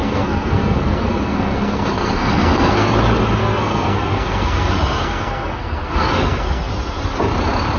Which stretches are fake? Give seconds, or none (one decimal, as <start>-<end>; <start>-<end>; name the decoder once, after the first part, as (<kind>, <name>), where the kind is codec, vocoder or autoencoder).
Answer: 0.0-2.9 (codec, SNAC); 3.4-6.7